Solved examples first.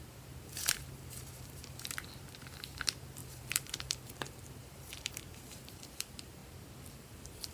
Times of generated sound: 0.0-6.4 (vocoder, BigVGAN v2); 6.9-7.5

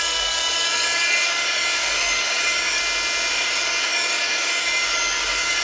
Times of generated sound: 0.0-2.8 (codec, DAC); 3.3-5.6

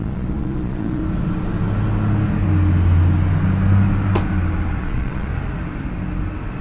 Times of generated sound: 0.0-1.0 (vocoder, Vocos); 4.8-5.3

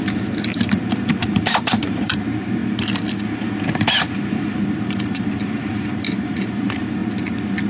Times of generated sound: 0.0-2.6 (vocoder, BigVGAN v2); 3.6-7.0

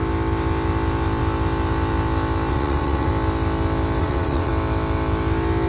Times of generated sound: 2.5-3.1 (vocoder, WaveNeXt); 4.0-4.5

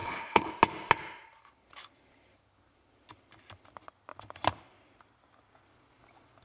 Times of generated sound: 0.0-0.5 (codec, HILCodec)